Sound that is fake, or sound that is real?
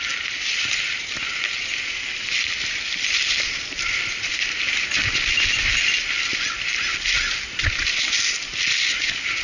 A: real